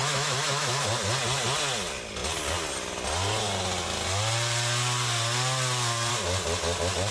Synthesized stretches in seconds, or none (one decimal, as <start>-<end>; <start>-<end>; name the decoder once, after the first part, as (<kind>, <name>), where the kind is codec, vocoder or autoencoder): 0.0-0.9 (autoencoder, DAC-VAE)